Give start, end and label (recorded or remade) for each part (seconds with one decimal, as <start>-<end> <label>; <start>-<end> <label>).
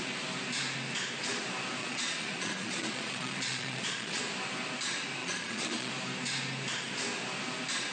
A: 0.0-1.8 recorded; 1.8-4.2 remade; 4.2-5.2 recorded; 5.2-5.9 remade; 5.9-7.9 recorded